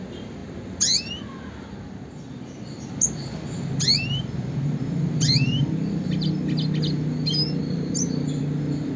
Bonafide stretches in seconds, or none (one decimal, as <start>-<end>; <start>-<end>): 0.0-7.6; 8.4-9.0